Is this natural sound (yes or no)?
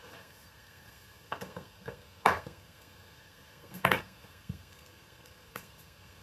no